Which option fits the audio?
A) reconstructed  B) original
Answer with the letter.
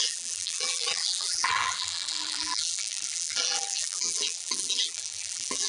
A